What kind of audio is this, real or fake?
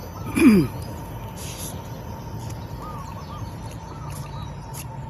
real